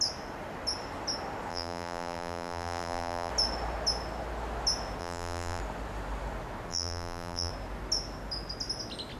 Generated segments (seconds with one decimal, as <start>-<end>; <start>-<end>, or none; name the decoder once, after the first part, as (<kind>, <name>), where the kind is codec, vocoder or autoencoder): 1.5-3.3 (vocoder, BigVGAN v2); 5.0-5.6; 6.7-7.5